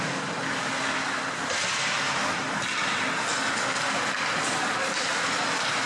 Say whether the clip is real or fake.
real